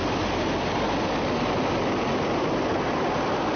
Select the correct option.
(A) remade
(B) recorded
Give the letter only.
B